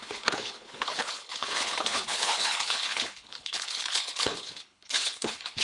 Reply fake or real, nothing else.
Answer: fake